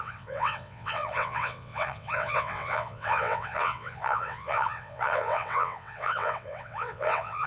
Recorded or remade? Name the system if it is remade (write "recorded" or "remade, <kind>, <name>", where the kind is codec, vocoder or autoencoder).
remade, vocoder, WaveNeXt